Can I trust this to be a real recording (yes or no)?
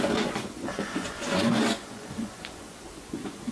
no